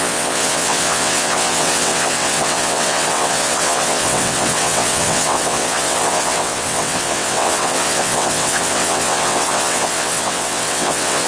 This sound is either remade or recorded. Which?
remade